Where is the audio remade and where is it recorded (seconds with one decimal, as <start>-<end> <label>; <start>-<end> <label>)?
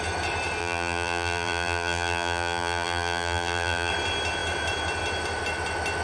0.0-0.6 recorded; 0.6-3.9 remade; 3.9-6.0 recorded